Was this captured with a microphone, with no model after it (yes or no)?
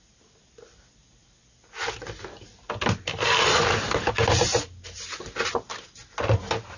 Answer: yes